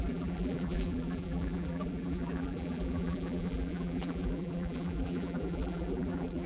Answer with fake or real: fake